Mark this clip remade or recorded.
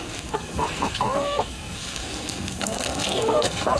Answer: remade